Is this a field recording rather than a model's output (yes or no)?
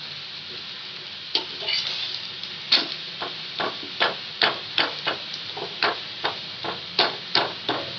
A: yes